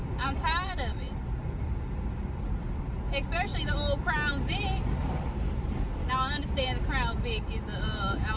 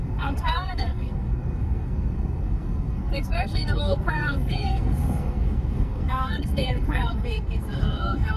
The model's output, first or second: second